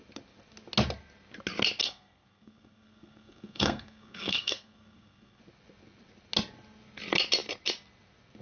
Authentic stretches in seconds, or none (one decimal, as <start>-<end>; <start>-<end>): 0.0-1.8; 5.4-8.4